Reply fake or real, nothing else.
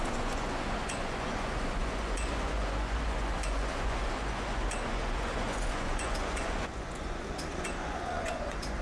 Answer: fake